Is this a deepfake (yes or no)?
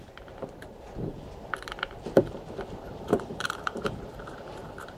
yes